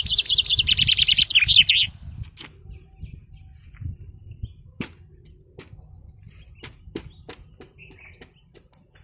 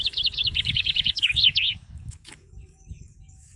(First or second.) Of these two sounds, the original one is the first